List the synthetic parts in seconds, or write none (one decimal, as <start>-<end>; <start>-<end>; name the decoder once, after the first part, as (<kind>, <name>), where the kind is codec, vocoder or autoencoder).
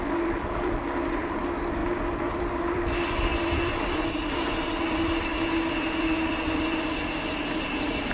0.0-8.1 (vocoder, BigVGAN v2)